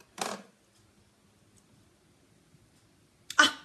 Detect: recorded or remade recorded